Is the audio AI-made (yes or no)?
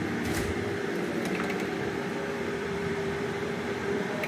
yes